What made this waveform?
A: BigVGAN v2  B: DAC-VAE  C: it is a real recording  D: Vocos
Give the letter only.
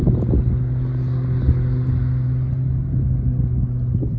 C